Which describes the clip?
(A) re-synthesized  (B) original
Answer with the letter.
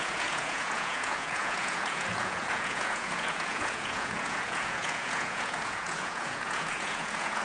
A